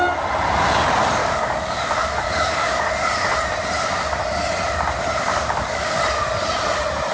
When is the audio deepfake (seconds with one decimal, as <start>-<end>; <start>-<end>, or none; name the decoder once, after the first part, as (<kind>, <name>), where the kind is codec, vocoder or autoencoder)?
1.2-2.9 (codec, DAC); 5.3-6.0

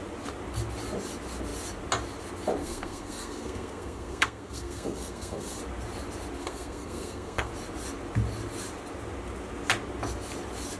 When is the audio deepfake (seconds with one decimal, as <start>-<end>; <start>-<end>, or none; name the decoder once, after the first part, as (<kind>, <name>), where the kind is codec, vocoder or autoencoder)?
2.6-5.6 (codec, SNAC); 6.4-7.5

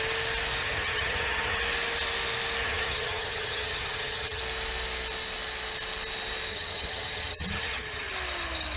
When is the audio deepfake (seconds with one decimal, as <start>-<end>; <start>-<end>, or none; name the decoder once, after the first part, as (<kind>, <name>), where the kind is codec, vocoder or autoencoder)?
0.6-1.6 (vocoder, HiFi-GAN); 2.6-4.4; 6.5-8.1

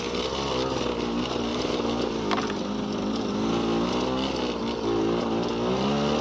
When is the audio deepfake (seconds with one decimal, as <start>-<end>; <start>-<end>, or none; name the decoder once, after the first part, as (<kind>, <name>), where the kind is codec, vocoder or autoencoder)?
1.5-2.1 (vocoder, BigVGAN v2)

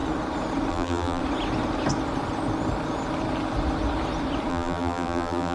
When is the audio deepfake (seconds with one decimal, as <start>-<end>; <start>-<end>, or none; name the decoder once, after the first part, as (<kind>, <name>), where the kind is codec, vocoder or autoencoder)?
0.7-1.2 (vocoder, BigVGAN v2); 4.5-5.5

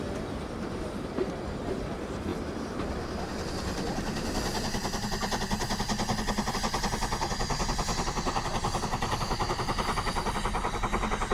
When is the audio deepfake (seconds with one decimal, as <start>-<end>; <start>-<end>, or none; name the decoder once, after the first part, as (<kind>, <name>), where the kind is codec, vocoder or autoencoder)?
none